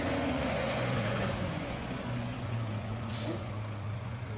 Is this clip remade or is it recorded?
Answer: remade